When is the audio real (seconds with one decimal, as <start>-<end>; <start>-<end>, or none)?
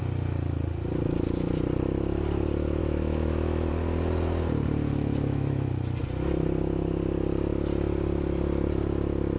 0.0-2.8; 3.7-4.9; 5.7-9.4